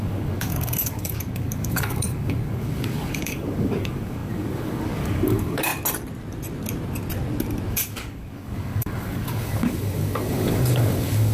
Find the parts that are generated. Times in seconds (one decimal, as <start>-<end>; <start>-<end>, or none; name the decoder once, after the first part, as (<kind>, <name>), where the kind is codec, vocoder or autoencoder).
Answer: 0.0-5.7 (codec, DAC); 7.7-11.3